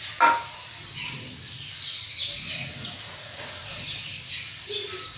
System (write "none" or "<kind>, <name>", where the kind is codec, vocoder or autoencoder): none